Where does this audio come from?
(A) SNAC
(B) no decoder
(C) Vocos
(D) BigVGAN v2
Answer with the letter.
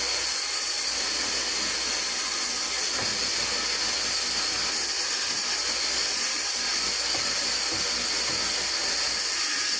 B